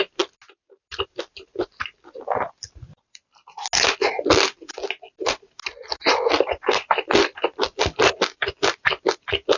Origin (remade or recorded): recorded